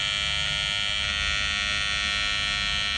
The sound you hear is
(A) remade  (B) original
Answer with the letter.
B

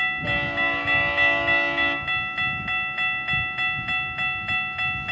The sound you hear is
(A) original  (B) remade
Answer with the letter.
A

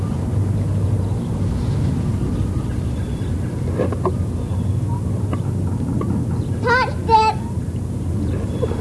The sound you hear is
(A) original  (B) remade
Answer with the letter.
A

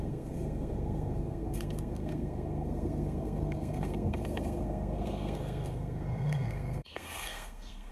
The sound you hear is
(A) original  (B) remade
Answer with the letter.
B